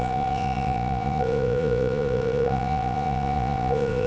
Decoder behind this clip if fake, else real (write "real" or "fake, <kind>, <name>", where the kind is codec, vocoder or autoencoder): fake, vocoder, Vocos